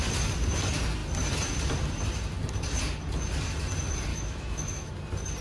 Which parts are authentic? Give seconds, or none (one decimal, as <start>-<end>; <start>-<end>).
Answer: 0.0-4.1; 4.9-5.4